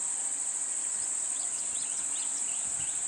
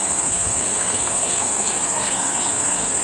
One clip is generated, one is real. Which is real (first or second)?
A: first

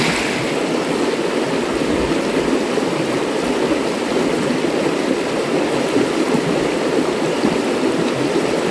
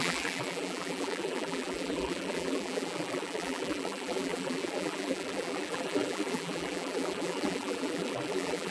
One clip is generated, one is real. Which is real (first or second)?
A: first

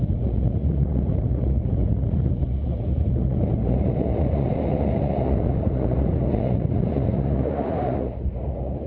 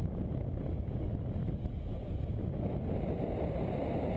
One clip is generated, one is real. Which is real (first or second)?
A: second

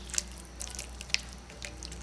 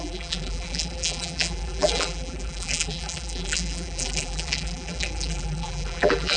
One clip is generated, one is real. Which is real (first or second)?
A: first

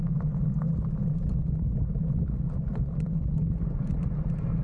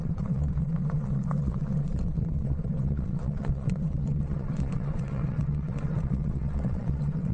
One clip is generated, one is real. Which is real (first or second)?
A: first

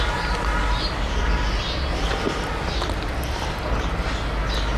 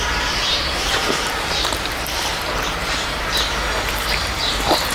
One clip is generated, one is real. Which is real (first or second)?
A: first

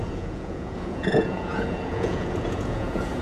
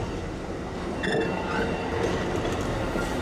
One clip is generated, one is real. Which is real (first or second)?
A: second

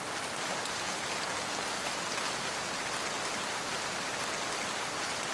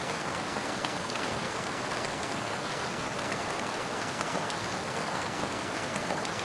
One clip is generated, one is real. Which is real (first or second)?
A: first